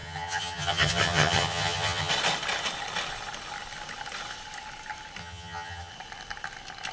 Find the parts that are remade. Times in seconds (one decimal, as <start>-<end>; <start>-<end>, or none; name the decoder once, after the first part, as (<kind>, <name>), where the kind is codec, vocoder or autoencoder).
0.0-2.1 (vocoder, HiFi-GAN); 5.2-5.9